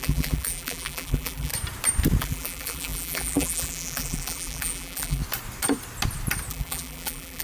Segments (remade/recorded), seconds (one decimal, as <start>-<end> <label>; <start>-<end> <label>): 0.0-1.5 remade; 1.5-2.2 recorded; 2.2-5.2 remade; 5.2-6.5 recorded; 6.5-7.4 remade